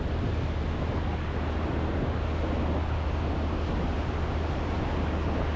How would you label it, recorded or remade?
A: recorded